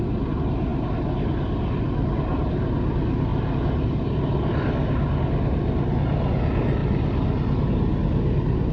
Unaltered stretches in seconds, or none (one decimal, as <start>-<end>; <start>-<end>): 0.0-8.7